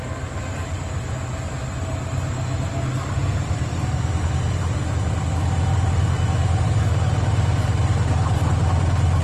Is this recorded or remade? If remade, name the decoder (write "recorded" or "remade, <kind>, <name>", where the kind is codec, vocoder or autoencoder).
recorded